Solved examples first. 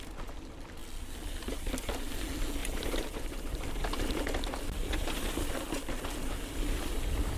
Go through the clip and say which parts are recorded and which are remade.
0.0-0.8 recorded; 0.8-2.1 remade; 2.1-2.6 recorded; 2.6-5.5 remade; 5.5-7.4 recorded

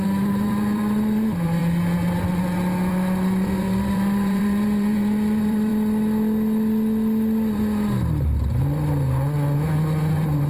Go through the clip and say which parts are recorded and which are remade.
0.0-1.6 remade; 1.6-2.9 recorded; 2.9-5.7 remade; 5.7-10.1 recorded; 10.1-10.5 remade

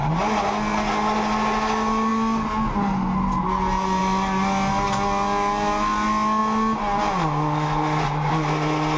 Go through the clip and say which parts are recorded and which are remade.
0.0-9.0 recorded